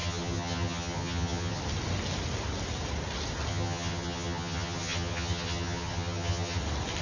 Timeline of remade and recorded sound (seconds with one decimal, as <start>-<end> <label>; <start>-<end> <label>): 0.0-1.6 remade; 1.6-3.5 recorded; 3.5-6.6 remade; 6.6-7.0 recorded